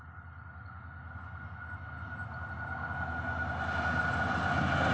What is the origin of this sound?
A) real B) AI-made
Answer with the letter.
A